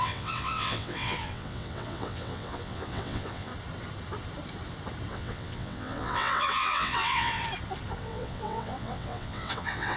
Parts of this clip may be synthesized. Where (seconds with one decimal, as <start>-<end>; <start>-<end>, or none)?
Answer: 0.0-3.5; 5.1-7.4; 8.0-10.0